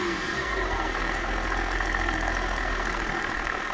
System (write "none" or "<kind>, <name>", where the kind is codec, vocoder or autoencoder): codec, SNAC